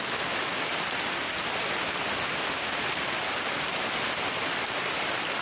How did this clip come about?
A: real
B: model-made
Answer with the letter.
A